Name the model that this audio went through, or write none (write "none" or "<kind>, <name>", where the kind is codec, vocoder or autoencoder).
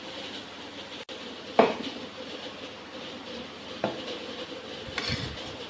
none